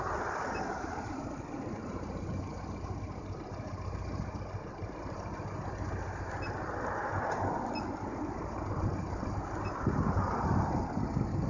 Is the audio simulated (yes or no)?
no